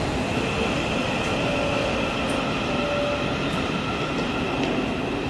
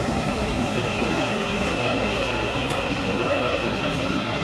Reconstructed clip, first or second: second